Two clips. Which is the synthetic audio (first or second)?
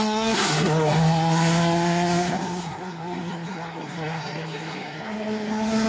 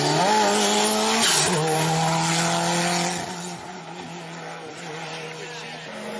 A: first